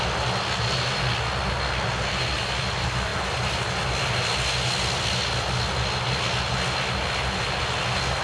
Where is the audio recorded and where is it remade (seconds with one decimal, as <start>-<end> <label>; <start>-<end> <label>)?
0.0-8.2 recorded